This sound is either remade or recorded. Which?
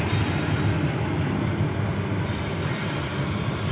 recorded